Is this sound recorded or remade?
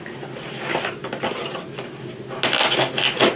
recorded